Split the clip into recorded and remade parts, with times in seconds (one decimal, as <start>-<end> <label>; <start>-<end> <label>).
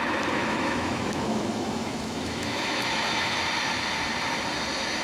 0.0-0.4 recorded; 0.4-3.4 remade; 3.4-5.0 recorded